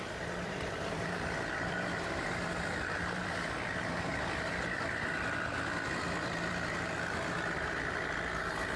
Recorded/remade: remade